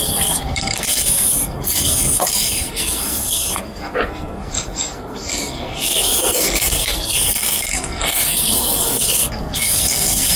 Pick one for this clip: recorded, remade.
remade